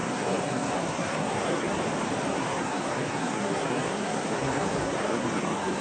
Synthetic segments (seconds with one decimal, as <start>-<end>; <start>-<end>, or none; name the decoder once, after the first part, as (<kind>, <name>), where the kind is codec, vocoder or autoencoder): 0.0-1.8 (codec, SNAC); 2.3-5.8